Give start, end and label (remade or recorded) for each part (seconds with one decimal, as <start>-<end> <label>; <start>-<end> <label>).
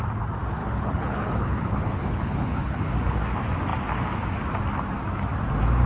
0.0-0.6 recorded; 0.6-2.9 remade; 2.9-5.9 recorded